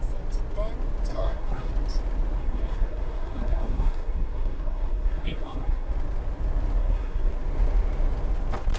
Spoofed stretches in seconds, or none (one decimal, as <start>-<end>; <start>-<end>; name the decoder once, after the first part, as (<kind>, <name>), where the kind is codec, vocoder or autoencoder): 1.1-1.7 (codec, SNAC); 2.4-5.9; 6.8-7.3